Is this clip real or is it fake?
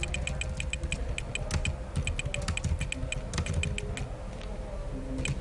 real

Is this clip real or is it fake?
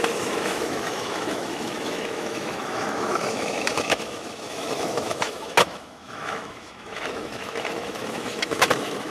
fake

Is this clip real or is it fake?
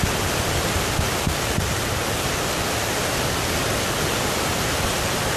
real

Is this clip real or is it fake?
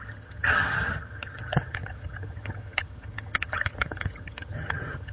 fake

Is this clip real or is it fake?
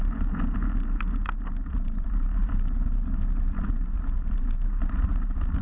real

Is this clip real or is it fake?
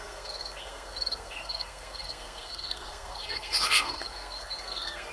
fake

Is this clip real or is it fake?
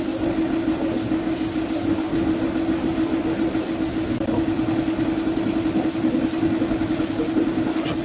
real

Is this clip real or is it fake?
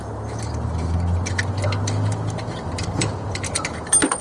real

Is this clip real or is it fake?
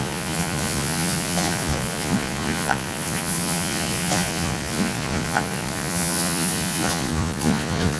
fake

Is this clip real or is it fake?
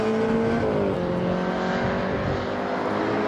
real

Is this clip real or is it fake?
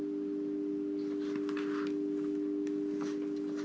real